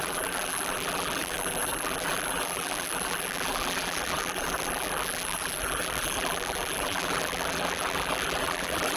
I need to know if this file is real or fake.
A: fake